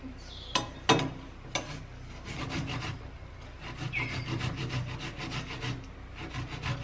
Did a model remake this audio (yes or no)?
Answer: no